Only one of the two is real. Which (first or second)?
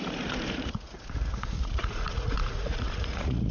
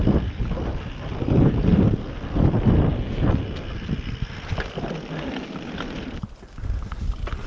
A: second